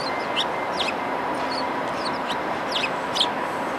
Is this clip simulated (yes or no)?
no